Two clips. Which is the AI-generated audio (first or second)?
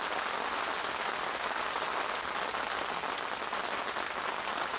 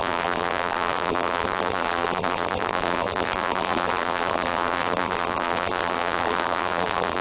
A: second